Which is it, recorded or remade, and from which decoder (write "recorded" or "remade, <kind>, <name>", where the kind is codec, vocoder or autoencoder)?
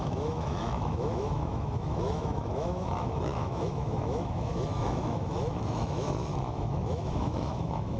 remade, autoencoder, DAC-VAE